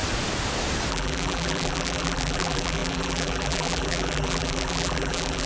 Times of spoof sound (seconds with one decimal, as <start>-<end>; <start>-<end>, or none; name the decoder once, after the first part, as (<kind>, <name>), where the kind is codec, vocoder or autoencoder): 0.9-5.5 (vocoder, BigVGAN v2)

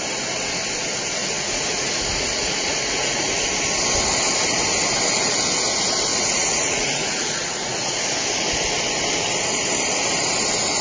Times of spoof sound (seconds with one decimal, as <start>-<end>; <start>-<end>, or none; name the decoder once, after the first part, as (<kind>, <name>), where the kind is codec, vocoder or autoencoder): 1.2-3.3 (vocoder, Vocos); 6.1-8.0